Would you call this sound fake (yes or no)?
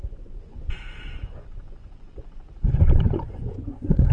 yes